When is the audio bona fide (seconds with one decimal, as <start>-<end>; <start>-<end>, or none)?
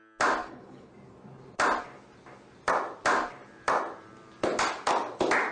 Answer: 0.0-0.4; 0.9-5.5